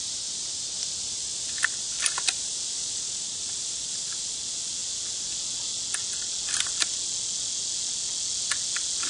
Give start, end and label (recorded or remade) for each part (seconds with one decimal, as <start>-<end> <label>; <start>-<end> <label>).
0.0-9.1 recorded